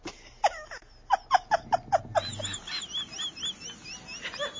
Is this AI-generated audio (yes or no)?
no